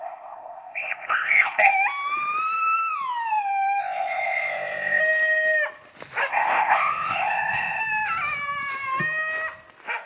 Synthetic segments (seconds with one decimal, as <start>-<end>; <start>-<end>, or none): 0.0-1.7; 3.8-5.0; 6.3-7.8